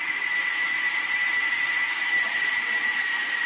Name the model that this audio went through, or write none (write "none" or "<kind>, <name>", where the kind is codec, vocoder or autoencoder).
none